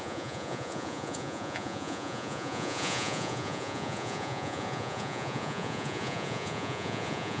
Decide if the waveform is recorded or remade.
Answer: remade